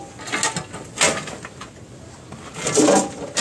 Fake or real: real